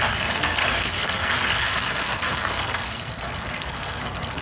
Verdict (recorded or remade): remade